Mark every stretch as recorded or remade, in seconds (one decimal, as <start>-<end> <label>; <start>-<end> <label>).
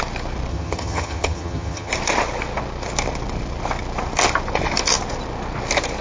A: 0.0-0.5 recorded; 0.5-1.9 remade; 1.9-6.0 recorded